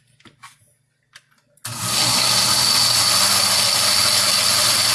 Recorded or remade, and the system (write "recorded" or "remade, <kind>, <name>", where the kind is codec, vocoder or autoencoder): recorded